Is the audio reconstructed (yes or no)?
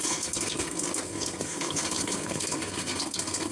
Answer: yes